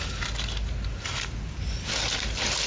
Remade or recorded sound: recorded